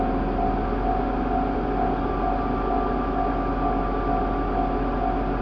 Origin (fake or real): real